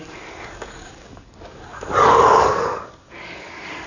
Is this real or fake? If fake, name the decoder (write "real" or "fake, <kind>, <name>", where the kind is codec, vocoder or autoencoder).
fake, codec, DAC